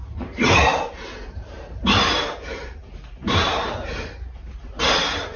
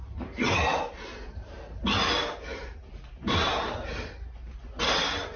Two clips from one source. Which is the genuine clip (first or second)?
second